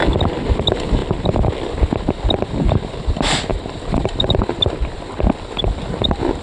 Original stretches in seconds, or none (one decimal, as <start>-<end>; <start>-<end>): 0.0-3.5; 4.6-6.4